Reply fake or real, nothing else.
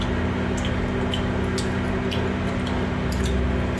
real